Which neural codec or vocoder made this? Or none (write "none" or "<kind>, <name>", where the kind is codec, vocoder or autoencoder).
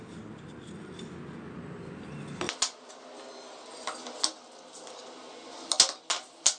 none